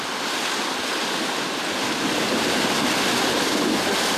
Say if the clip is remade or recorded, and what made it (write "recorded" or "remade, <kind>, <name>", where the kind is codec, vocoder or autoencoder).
recorded